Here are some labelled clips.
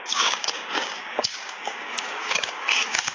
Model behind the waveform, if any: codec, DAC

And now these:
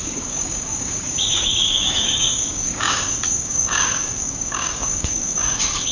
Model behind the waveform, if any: codec, DAC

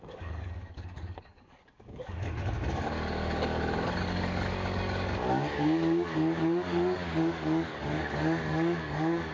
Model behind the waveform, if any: codec, DAC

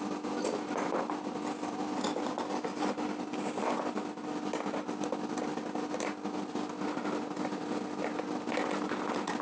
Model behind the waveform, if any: none